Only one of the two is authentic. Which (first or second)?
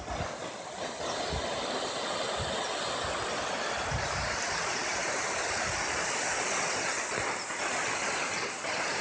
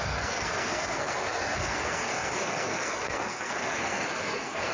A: first